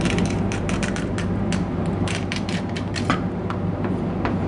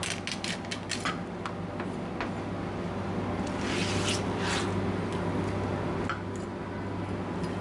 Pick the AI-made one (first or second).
first